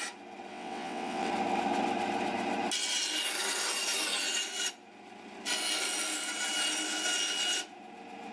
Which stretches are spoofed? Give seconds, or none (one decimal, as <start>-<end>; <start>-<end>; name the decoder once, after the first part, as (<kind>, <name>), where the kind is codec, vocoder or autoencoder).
0.5-1.3 (vocoder, WaveNeXt)